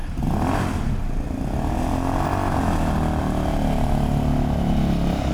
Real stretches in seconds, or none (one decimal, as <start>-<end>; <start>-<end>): 0.0-5.3